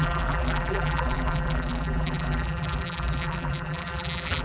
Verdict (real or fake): fake